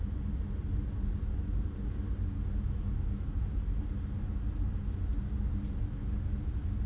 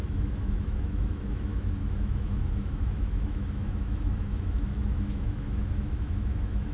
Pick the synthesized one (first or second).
second